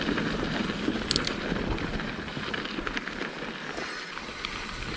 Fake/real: real